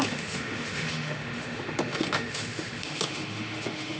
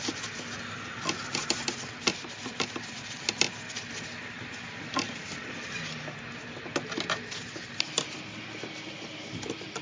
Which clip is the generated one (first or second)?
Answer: first